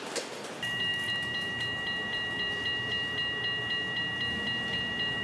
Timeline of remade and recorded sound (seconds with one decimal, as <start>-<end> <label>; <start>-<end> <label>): 0.0-5.2 recorded